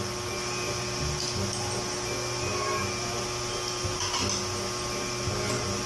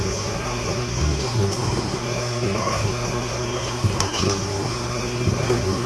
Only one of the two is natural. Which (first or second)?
first